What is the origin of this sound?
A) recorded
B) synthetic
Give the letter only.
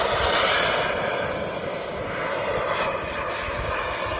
A